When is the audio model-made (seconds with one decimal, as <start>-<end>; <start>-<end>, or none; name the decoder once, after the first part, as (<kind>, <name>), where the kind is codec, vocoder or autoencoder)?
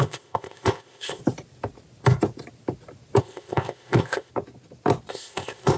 0.0-1.2 (codec, ZipCodec); 3.2-4.3; 5.1-5.8